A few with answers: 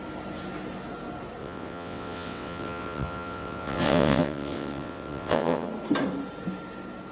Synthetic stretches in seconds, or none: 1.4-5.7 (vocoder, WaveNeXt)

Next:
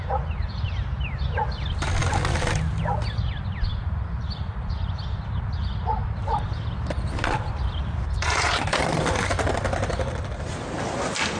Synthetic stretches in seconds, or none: 3.7-4.7 (vocoder, BigVGAN v2); 7.8-8.6

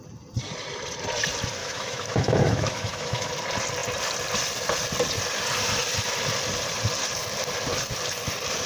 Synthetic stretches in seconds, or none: 1.6-3.3 (autoencoder, DAC-VAE)

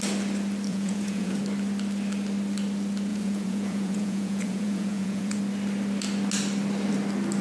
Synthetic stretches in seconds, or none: 0.7-1.4 (vocoder, Vocos); 3.1-5.4

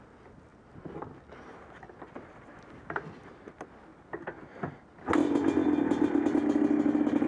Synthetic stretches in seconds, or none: none

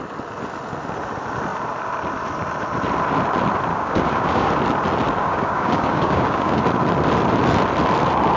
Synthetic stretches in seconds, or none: 3.7-4.5 (codec, DAC); 5.2-6.6

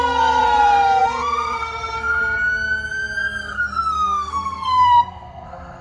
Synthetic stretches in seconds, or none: 0.0-2.2 (codec, SNAC); 3.4-5.8

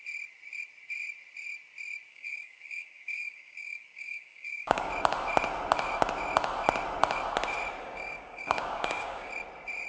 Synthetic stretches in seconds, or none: 2.1-4.9 (codec, DAC); 7.8-9.3